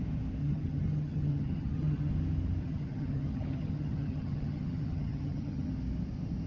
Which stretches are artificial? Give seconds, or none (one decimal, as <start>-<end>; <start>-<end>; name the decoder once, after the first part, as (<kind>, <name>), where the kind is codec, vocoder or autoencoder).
0.4-2.1 (vocoder, HiFi-GAN); 2.6-5.7